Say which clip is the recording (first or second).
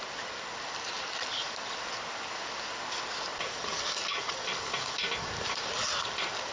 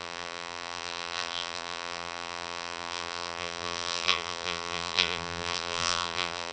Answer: first